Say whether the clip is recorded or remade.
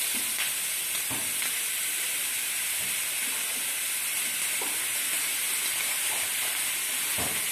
recorded